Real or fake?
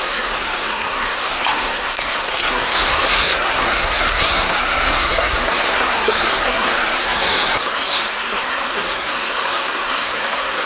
fake